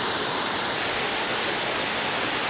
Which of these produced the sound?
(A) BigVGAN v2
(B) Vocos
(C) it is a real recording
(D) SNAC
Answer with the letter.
C